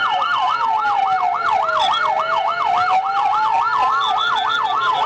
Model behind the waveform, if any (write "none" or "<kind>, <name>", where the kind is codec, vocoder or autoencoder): none